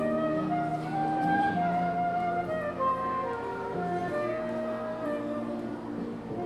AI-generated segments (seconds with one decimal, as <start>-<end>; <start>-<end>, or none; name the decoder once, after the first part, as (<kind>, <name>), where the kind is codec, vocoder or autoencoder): 0.7-1.5 (vocoder, BigVGAN v2)